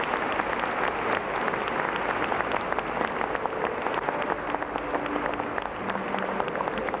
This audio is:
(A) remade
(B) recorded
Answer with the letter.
B